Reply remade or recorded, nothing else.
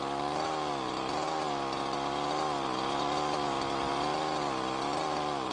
recorded